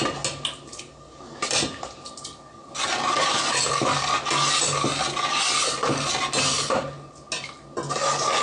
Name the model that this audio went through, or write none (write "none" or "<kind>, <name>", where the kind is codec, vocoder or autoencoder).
none